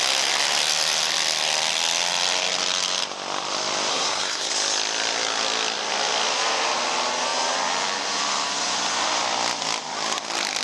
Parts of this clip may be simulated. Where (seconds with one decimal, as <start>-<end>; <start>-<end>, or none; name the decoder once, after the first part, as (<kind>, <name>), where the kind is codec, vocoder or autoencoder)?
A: 3.9-4.5 (codec, SNAC)